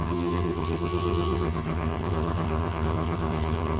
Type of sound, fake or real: fake